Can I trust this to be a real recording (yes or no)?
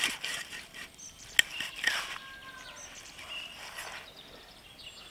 yes